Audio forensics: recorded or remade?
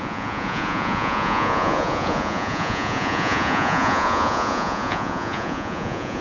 remade